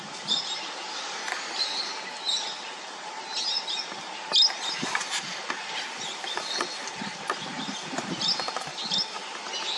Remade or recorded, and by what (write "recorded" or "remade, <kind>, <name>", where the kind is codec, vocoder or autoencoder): recorded